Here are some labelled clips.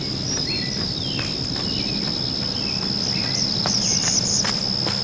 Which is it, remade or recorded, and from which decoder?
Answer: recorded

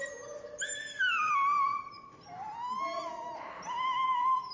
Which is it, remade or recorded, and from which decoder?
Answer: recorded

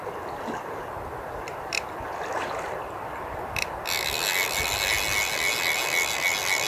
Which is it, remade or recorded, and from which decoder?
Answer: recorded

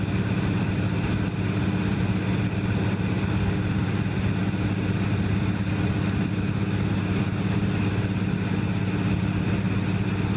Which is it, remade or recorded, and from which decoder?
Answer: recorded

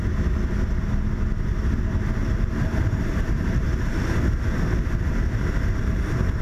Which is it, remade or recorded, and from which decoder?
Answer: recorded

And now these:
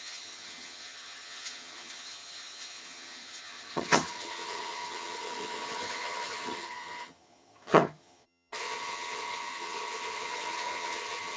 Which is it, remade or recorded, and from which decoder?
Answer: remade, vocoder, HiFi-GAN